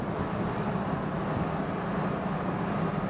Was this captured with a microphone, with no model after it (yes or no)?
yes